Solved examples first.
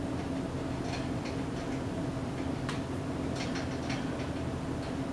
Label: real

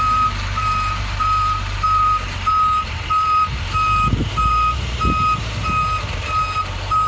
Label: fake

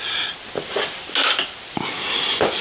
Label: real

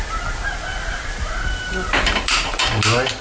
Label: real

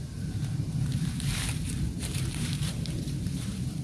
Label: fake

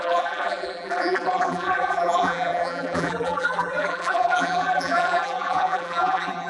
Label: fake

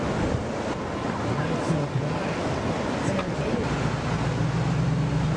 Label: real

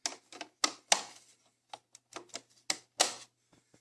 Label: real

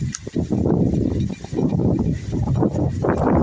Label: real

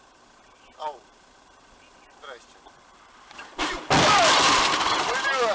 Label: fake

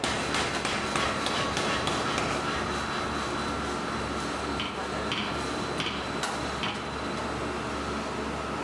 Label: real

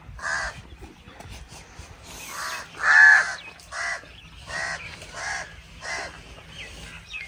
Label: real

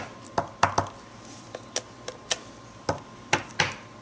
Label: real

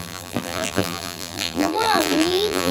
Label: fake